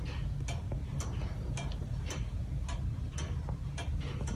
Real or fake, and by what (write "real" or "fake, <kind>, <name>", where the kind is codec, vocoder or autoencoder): real